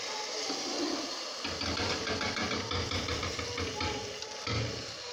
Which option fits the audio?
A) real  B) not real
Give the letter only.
A